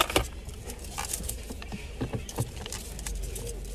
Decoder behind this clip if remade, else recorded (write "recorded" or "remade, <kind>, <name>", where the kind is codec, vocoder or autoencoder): recorded